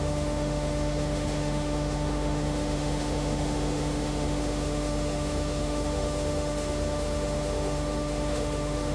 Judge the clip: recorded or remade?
remade